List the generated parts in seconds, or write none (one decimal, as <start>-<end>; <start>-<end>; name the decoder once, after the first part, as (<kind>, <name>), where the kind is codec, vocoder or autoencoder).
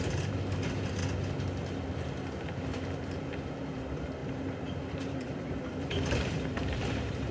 0.0-1.0 (vocoder, BigVGAN v2); 2.3-7.3